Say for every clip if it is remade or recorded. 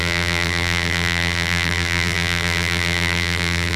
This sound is remade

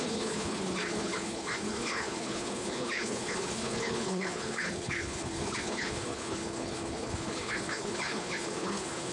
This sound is remade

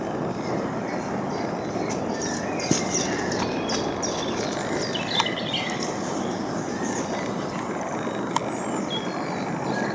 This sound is recorded